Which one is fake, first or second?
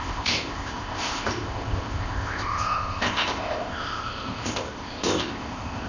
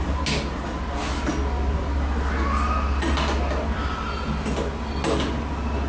first